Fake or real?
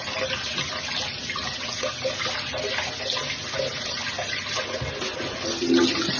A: real